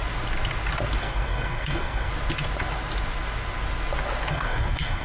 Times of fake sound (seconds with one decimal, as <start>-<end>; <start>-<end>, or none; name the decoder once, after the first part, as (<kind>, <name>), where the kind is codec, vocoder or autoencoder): 1.0-2.1 (codec, SNAC); 4.3-5.0